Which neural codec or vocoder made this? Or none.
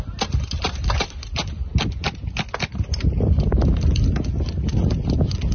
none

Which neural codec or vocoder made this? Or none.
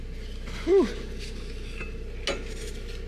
none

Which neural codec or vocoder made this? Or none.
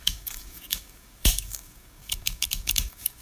codec, DAC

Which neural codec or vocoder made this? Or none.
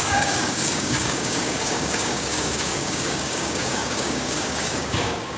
codec, DAC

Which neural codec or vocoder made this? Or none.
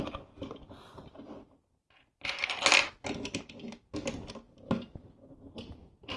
none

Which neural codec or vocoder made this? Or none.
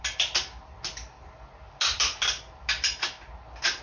none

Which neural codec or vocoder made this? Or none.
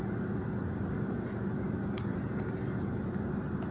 none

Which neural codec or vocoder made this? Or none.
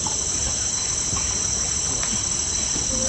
none